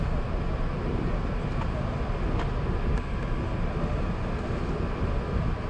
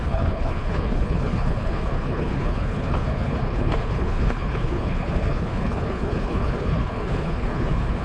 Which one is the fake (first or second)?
second